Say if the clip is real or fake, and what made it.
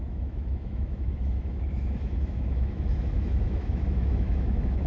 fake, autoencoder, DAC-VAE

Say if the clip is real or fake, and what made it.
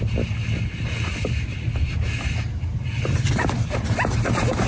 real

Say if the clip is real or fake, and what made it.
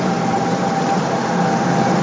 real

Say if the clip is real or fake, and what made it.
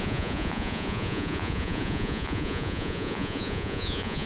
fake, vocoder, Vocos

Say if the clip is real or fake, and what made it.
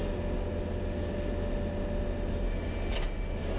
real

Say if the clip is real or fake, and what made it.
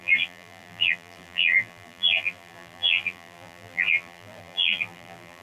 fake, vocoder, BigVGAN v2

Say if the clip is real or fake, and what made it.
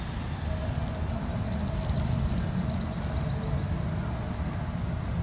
real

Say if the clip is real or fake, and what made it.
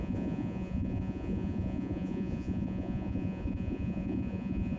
fake, vocoder, Vocos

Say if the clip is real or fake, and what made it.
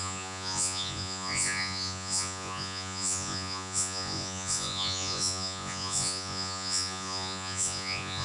fake, vocoder, Vocos